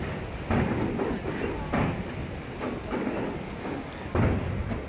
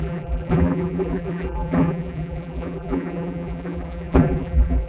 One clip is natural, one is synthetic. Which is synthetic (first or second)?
second